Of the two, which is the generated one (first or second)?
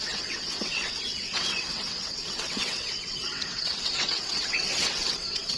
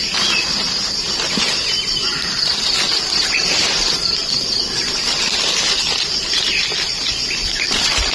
first